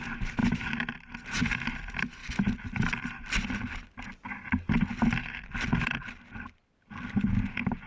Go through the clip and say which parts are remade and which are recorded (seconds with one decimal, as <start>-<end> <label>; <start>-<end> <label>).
0.0-7.9 recorded